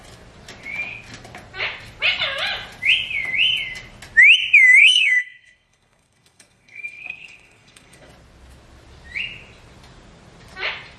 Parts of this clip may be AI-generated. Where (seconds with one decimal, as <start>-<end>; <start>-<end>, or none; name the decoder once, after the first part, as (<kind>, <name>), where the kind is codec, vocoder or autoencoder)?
4.8-8.1 (codec, SNAC)